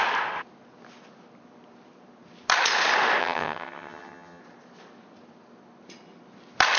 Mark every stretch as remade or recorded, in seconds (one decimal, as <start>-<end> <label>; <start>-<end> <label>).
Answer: 0.0-3.2 recorded; 3.2-4.4 remade; 4.4-6.8 recorded